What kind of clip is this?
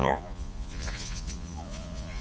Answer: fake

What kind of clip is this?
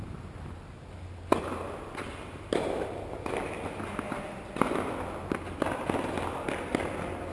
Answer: real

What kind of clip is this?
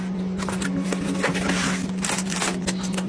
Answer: real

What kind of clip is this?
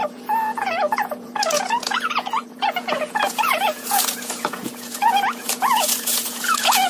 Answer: fake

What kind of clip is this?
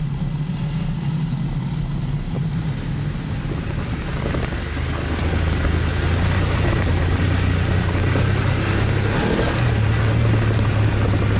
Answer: real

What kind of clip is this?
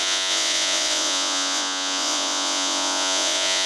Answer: fake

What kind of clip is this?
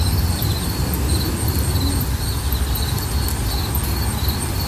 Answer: real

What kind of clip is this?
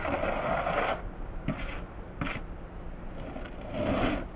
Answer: real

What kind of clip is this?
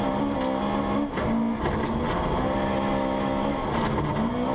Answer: real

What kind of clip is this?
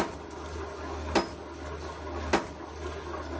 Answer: real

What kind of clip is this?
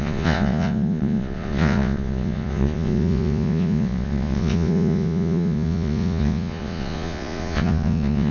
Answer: fake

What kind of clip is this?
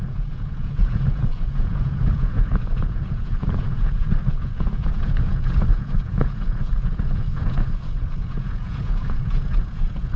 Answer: fake